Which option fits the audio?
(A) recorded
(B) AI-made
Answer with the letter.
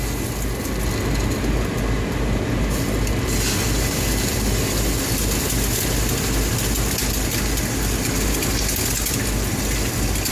A